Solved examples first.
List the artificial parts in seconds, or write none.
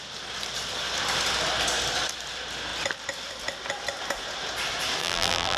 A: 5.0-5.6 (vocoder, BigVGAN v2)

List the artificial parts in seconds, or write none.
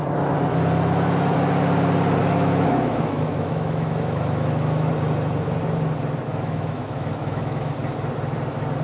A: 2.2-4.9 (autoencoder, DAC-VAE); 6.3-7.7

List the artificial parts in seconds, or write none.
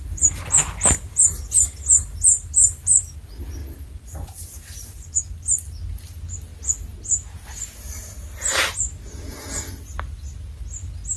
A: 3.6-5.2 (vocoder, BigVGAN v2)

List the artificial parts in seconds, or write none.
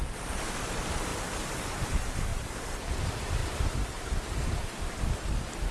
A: none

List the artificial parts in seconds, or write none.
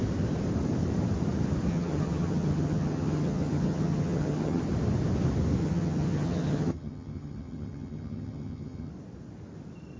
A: 1.7-4.6 (vocoder, HiFi-GAN); 5.6-8.9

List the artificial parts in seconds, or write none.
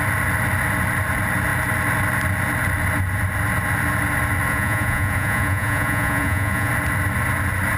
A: 4.5-6.7 (vocoder, Vocos)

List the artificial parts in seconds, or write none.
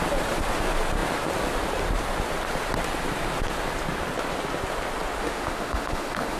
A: 5.2-6.4 (autoencoder, DAC-VAE)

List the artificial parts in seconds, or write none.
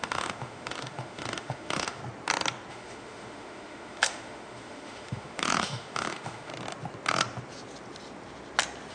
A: 0.0-2.0 (autoencoder, DAC-VAE); 2.7-6.5